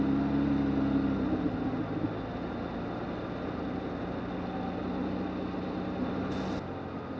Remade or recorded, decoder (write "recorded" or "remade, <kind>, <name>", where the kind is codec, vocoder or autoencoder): recorded